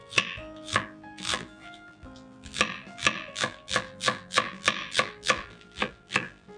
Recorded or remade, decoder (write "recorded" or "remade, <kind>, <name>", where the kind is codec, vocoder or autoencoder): remade, vocoder, BigVGAN v2